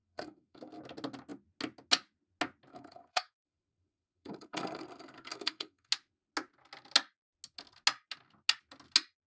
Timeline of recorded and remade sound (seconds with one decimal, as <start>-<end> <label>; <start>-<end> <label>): 0.0-0.8 remade; 0.8-2.7 recorded; 2.7-5.9 remade; 5.9-9.4 recorded